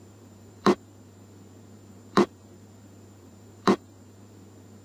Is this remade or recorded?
remade